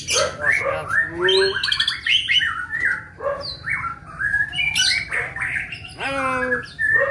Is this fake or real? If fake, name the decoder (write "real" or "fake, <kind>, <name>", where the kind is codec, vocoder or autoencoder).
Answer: real